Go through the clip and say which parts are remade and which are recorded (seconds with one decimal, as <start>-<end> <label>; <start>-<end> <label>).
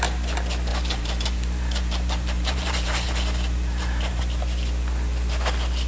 0.0-0.7 recorded; 0.7-4.2 remade; 4.2-5.9 recorded